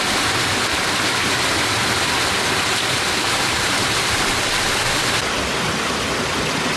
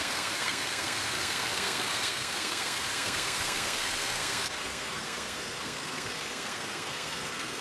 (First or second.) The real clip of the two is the first